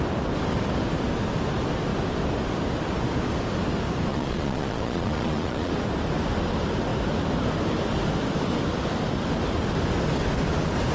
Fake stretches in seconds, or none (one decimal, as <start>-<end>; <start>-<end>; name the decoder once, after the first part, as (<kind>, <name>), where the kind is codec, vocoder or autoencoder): 4.1-5.7 (vocoder, Vocos)